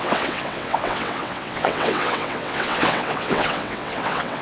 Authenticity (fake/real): fake